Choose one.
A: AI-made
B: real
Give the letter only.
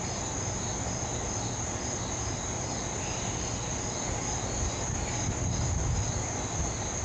B